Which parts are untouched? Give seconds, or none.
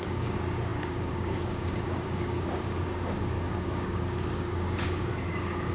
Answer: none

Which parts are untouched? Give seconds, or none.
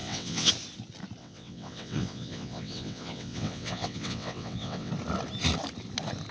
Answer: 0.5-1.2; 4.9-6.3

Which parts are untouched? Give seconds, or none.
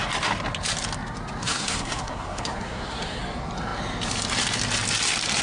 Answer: 0.0-1.4; 3.2-5.4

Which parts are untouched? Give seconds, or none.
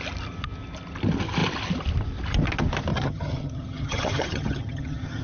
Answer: 0.0-2.9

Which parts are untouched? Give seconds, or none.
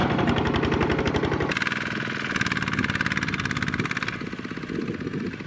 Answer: 1.0-5.5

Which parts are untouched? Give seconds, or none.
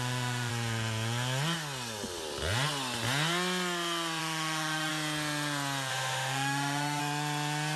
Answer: 0.5-4.2; 4.9-5.9; 7.0-7.8